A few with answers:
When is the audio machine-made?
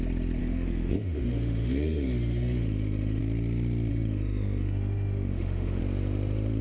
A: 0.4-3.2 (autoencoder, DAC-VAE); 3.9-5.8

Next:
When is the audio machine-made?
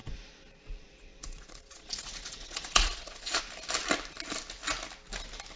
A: 0.0-3.4 (vocoder, Vocos)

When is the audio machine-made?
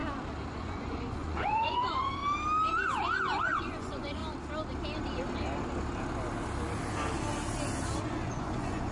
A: 0.5-2.2 (vocoder, Vocos); 3.4-4.2; 8.0-8.9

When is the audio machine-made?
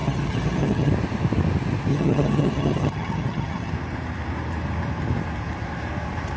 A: 0.0-0.9 (vocoder, HiFi-GAN); 1.9-3.7